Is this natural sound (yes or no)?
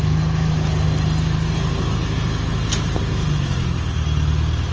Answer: yes